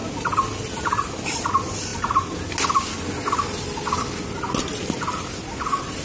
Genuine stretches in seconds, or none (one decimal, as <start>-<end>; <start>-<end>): 0.0-6.0